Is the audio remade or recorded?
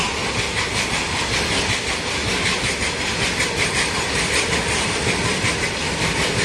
recorded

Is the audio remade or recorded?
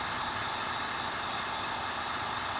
recorded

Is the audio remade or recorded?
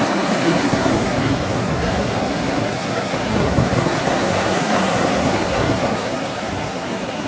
remade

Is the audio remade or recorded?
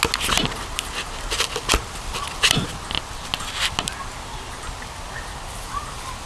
recorded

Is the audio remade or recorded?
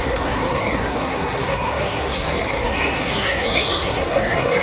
remade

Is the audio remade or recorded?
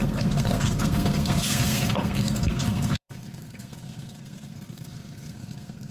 remade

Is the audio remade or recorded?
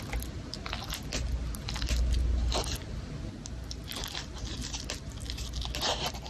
recorded